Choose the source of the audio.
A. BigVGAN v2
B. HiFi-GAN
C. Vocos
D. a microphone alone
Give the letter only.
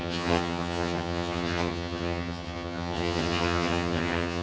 B